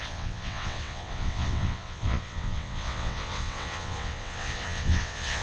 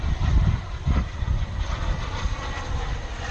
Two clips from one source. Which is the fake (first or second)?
first